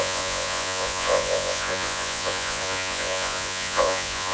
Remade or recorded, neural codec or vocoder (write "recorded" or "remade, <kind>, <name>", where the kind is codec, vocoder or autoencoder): remade, vocoder, Vocos